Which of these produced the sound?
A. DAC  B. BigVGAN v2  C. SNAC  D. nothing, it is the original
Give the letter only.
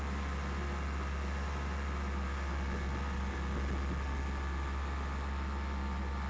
D